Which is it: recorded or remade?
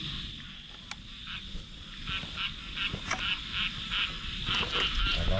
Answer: recorded